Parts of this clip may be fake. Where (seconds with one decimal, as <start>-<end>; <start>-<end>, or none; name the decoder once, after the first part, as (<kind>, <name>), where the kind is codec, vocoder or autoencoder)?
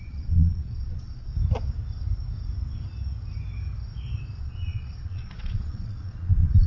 0.0-1.3 (vocoder, Vocos); 4.4-6.7